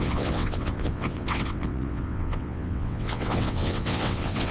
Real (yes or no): no